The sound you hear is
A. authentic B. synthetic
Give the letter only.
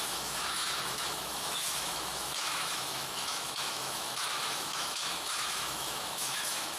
B